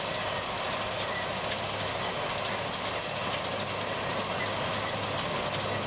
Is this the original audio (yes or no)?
yes